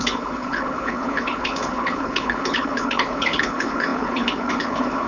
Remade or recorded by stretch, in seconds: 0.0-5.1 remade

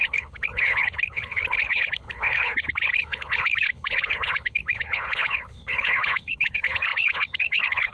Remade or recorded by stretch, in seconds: 0.0-7.9 remade

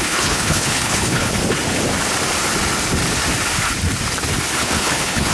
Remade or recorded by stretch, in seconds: 0.0-1.4 remade; 1.4-4.6 recorded; 4.6-5.3 remade

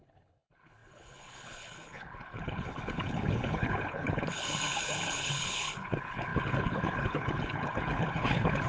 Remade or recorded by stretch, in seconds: 0.0-8.7 remade

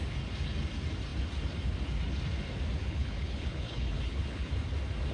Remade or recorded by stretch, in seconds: 0.0-2.8 recorded; 2.8-4.5 remade; 4.5-5.1 recorded

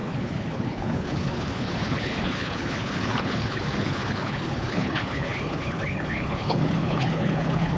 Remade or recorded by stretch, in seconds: 0.0-7.8 remade

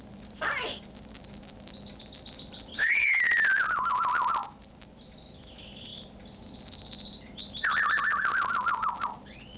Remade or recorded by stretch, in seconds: 0.0-2.7 recorded; 2.7-3.2 remade; 3.2-9.6 recorded

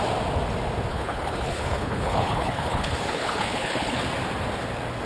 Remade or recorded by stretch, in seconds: 0.0-0.9 recorded; 0.9-4.0 remade; 4.0-5.1 recorded